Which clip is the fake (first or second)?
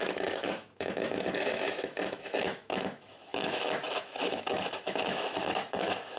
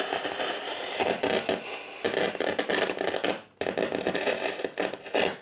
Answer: first